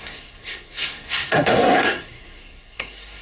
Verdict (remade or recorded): remade